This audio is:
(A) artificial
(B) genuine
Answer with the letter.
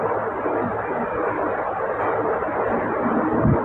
A